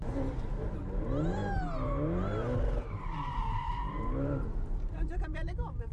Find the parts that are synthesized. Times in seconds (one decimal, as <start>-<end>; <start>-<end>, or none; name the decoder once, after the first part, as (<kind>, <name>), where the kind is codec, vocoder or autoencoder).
0.0-5.9 (vocoder, BigVGAN v2)